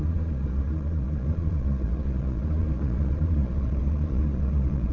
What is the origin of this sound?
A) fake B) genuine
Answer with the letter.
A